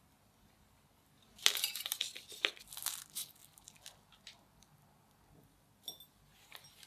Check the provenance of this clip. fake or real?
real